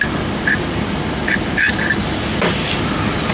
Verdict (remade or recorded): recorded